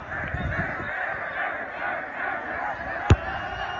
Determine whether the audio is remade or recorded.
recorded